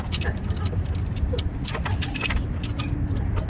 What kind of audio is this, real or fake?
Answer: real